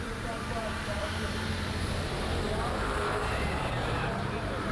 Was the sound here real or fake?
fake